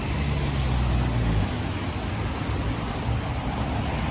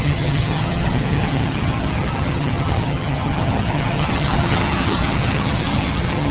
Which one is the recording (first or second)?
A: first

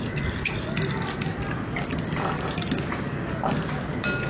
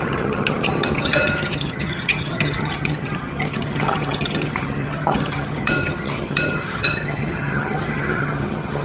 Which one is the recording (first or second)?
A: first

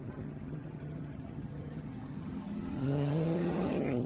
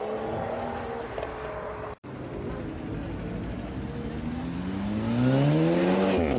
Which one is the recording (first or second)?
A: second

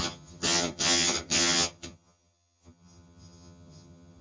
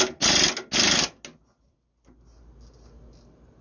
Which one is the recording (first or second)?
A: second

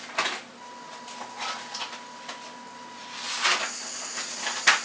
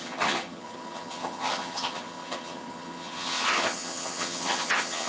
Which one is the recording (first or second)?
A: first